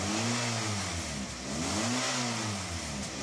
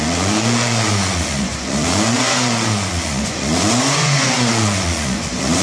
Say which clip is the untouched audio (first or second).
first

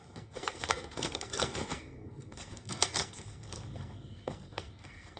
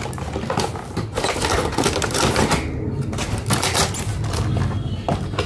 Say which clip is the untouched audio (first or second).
second